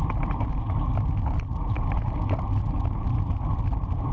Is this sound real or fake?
real